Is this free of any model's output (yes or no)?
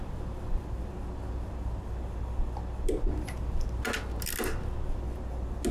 yes